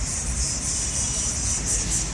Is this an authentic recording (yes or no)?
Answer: yes